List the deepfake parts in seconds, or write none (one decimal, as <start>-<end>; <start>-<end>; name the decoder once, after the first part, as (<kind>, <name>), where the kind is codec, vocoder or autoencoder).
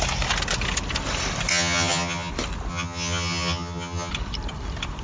1.5-2.3 (vocoder, HiFi-GAN); 2.7-4.1